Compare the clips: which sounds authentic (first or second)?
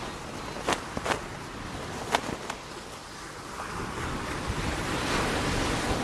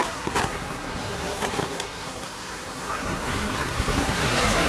first